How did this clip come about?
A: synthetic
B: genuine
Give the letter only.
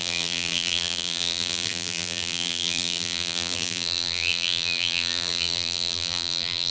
A